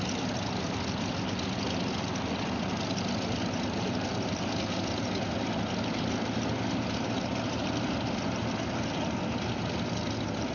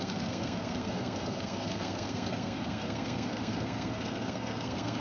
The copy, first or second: second